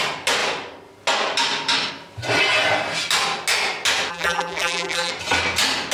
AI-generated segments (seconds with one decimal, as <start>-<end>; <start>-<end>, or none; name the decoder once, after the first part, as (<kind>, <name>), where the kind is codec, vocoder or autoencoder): 4.1-5.1 (vocoder, BigVGAN v2)